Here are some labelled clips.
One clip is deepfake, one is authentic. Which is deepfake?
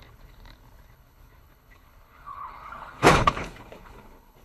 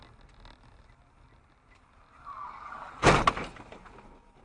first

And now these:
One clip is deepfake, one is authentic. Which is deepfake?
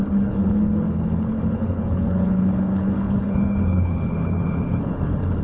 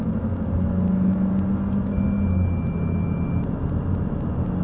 first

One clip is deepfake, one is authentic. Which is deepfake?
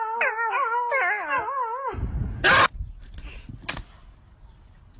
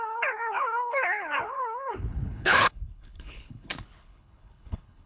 second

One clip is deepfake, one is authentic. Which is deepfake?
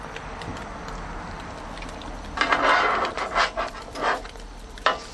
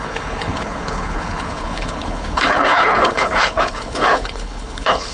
second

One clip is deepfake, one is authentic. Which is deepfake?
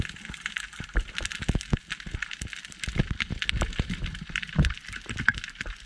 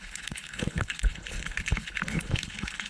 second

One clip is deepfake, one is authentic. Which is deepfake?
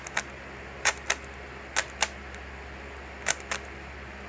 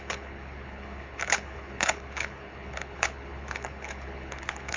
second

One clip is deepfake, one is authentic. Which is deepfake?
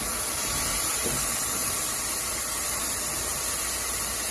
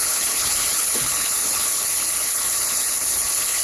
second